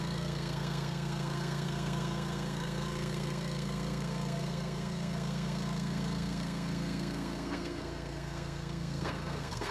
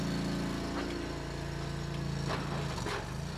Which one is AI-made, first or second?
first